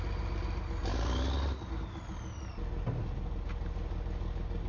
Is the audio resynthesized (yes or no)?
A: no